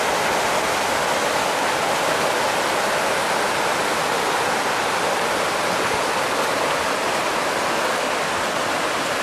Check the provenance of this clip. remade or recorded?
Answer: recorded